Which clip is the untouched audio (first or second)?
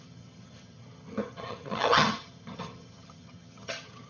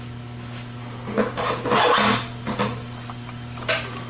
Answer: second